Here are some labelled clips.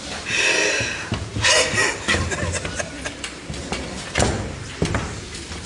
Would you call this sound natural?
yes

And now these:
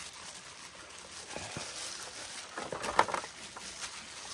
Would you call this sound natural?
yes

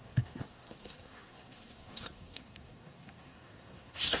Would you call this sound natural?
no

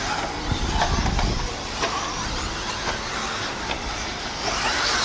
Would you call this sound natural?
yes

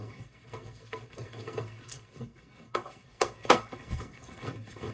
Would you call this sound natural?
no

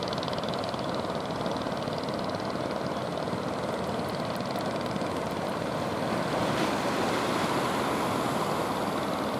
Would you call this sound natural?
yes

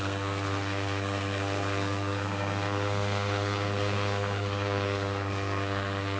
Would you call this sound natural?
no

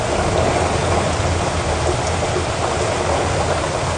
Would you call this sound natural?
yes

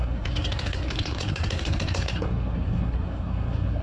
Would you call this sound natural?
no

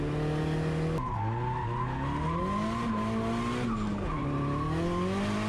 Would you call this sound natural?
yes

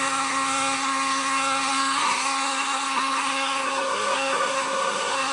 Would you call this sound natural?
no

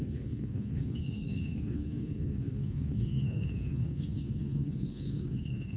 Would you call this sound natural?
no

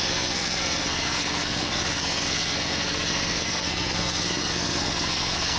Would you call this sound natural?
no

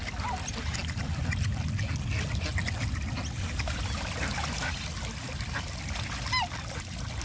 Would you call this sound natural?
yes